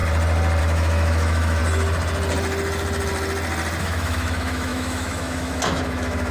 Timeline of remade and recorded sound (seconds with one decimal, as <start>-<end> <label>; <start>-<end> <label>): 0.0-0.6 recorded; 0.6-1.6 remade; 1.6-3.8 recorded; 3.8-6.3 remade